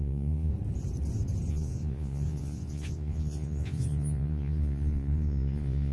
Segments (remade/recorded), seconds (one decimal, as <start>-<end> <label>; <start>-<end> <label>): 0.0-0.5 remade; 0.5-1.5 recorded; 1.5-5.9 remade